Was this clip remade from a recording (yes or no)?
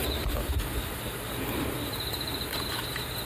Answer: no